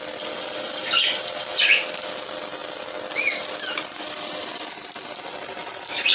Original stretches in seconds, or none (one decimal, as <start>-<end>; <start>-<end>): 0.0-6.1